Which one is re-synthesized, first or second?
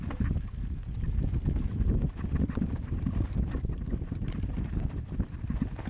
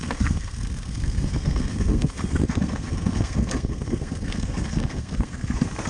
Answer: second